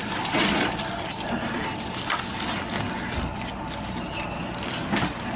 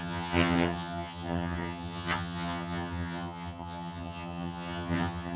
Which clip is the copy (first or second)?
second